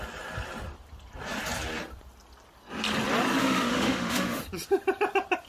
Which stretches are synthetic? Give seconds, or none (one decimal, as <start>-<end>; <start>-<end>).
3.4-4.4